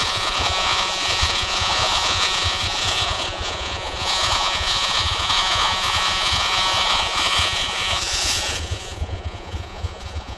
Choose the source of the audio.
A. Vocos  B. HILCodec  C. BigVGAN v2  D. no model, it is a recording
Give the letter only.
A